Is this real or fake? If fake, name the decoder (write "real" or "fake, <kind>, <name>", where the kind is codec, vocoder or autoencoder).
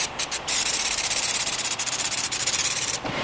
fake, vocoder, BigVGAN v2